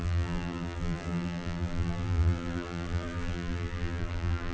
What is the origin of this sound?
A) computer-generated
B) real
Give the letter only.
A